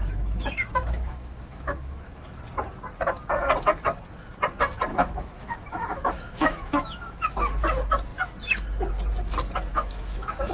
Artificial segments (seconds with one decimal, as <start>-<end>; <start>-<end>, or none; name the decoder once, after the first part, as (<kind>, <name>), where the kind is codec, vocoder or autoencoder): 0.0-2.4 (autoencoder, DAC-VAE); 4.9-7.4; 9.7-10.5